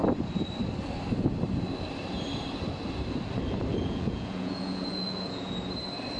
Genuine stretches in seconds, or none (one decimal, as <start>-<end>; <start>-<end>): 0.0-3.7; 5.6-6.2